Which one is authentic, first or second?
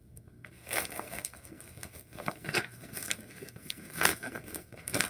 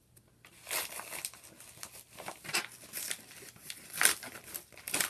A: second